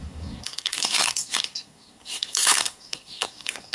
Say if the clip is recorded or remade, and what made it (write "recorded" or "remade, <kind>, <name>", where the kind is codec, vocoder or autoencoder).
remade, codec, SNAC